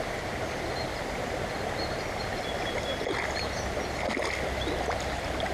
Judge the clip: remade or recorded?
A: recorded